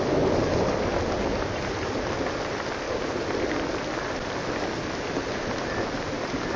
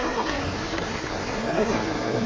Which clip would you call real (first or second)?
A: first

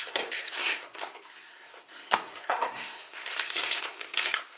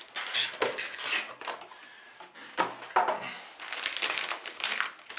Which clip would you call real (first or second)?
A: second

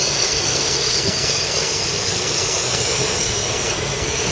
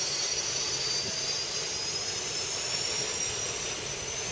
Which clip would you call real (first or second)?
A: second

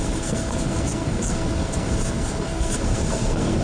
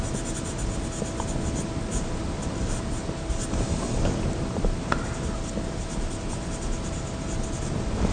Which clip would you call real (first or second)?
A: second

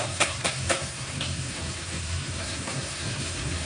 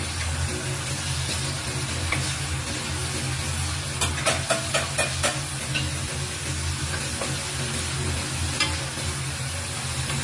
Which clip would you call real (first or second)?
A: second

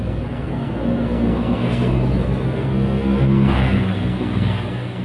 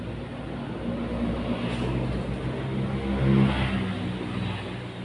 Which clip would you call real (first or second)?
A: second